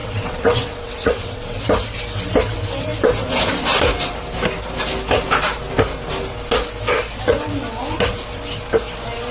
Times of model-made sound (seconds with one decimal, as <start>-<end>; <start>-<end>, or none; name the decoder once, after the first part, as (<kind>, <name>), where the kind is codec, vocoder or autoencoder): 0.0-1.6 (vocoder, WaveNeXt)